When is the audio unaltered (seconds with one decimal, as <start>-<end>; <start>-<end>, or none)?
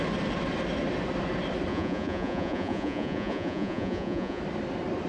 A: 0.0-1.7; 4.4-5.1